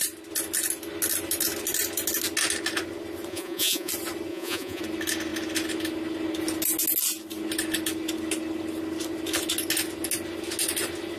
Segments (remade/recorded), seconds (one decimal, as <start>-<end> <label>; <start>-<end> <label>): 0.0-3.3 recorded; 3.3-3.9 remade; 3.9-4.3 recorded; 4.3-4.8 remade; 4.8-11.2 recorded